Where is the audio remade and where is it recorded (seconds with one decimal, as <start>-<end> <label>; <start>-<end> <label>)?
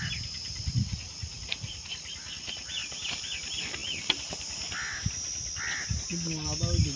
0.0-0.8 recorded; 0.8-1.9 remade; 1.9-7.0 recorded